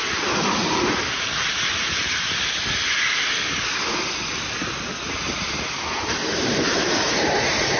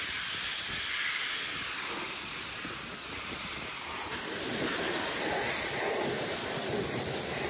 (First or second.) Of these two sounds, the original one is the first